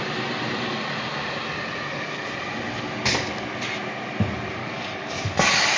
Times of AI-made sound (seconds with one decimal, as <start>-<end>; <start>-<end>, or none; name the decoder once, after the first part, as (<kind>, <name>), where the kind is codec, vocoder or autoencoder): 4.6-5.8 (codec, DAC)